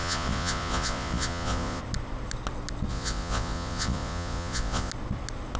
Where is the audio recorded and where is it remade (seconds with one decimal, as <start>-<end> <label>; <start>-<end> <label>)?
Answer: 0.0-1.8 remade; 1.8-2.9 recorded; 2.9-4.9 remade; 4.9-5.6 recorded